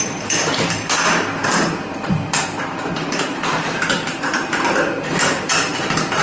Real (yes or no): no